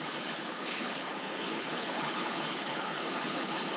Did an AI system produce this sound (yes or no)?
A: yes